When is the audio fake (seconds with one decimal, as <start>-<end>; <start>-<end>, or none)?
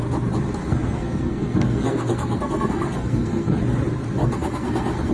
0.6-3.6; 4.2-5.1